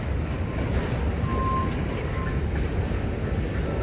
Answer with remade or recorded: recorded